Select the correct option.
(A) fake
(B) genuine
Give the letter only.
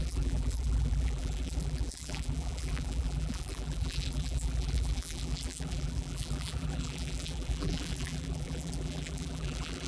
A